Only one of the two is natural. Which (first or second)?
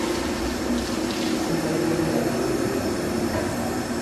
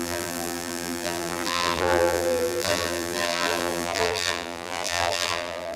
first